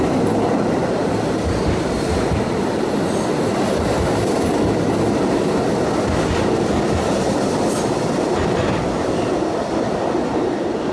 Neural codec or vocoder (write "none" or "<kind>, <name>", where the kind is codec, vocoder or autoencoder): none